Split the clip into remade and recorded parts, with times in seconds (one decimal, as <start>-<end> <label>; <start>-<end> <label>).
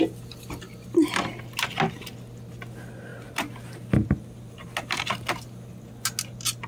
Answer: 0.0-6.7 recorded